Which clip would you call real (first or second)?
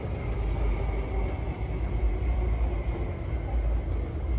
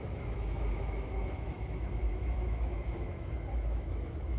first